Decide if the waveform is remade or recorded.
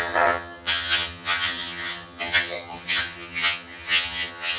remade